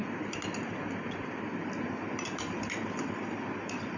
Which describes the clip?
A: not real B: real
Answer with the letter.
B